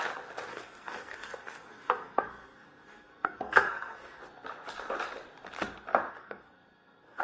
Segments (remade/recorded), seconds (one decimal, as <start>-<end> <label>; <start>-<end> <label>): 0.0-0.5 recorded; 0.5-4.2 remade; 4.2-6.1 recorded; 6.1-7.2 remade